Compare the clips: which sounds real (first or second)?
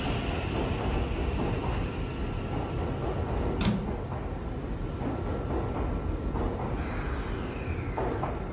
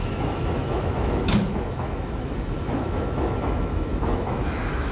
first